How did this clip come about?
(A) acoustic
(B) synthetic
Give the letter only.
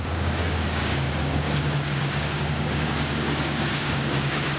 B